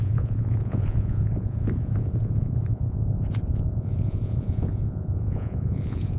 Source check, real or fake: fake